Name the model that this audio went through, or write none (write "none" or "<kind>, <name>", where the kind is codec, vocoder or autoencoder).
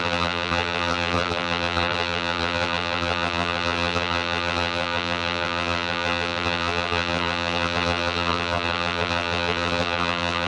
vocoder, BigVGAN v2